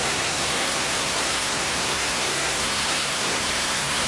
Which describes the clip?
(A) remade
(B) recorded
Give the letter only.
A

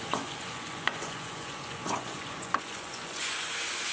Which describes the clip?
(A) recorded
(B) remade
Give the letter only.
B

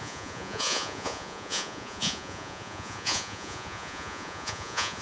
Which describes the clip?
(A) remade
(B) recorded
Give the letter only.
A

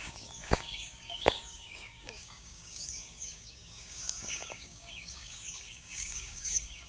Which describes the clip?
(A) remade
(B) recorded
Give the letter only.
A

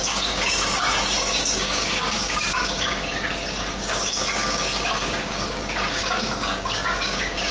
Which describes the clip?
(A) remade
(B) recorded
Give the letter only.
A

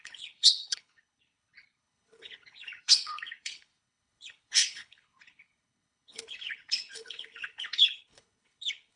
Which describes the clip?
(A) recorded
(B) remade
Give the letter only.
B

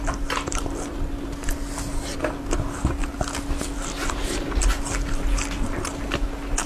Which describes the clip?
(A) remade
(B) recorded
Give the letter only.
B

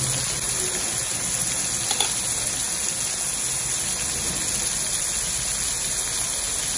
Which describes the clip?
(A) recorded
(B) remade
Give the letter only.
A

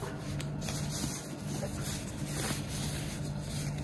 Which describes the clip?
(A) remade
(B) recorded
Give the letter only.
B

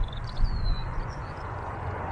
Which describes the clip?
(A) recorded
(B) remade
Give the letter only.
B